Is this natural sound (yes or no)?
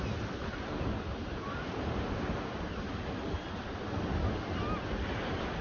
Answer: yes